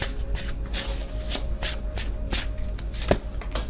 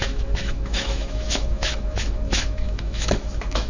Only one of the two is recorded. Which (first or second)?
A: first